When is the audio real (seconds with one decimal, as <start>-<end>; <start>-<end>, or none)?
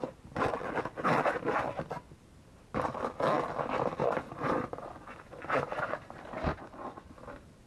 0.0-4.0; 6.0-6.5; 7.1-7.7